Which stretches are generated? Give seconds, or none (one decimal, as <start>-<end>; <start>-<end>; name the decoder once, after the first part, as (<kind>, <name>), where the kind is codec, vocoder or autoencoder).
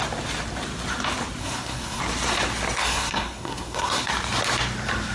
1.4-2.0 (codec, SNAC); 2.8-4.1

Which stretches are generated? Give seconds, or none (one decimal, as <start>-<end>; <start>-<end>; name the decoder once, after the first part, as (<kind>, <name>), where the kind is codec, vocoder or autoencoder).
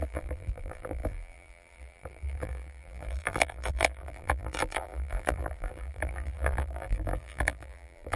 0.0-8.2 (vocoder, BigVGAN v2)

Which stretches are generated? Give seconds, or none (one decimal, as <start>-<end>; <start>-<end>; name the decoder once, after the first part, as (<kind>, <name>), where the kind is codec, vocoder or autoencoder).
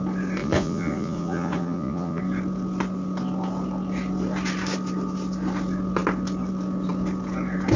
0.4-2.2 (vocoder, Vocos)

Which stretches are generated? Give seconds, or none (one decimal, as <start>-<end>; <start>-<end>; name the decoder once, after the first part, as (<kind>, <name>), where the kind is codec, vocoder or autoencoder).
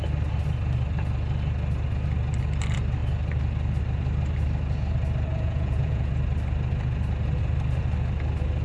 5.3-6.1 (vocoder, Vocos)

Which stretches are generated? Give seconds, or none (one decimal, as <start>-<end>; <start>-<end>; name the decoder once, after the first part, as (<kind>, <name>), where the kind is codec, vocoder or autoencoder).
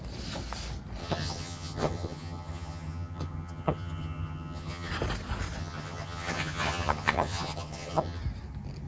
1.0-4.9 (vocoder, HiFi-GAN); 5.6-8.2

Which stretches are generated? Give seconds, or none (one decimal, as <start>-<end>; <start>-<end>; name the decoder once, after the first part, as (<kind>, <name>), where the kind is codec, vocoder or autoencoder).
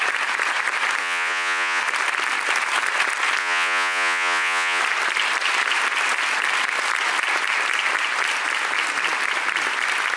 1.0-1.8 (vocoder, Vocos); 3.4-4.8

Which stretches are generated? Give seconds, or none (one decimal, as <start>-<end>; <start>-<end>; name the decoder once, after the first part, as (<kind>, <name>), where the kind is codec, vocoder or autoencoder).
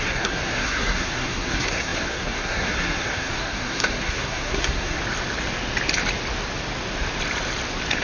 0.0-5.0 (codec, SNAC)